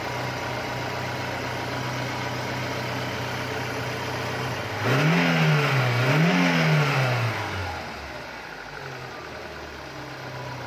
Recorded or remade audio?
recorded